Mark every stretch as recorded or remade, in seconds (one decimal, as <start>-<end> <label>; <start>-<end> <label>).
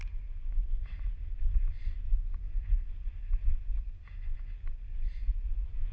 0.0-5.9 recorded